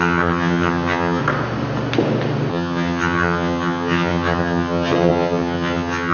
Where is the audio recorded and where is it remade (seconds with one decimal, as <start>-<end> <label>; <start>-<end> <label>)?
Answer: 0.0-1.2 remade; 1.2-2.5 recorded; 2.5-6.1 remade